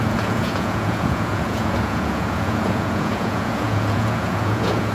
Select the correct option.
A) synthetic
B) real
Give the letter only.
A